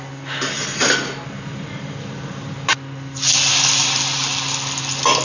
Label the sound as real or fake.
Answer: real